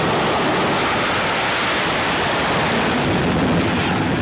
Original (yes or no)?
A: yes